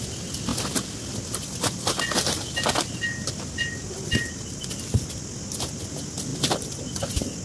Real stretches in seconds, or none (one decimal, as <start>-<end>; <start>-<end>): 0.0-7.4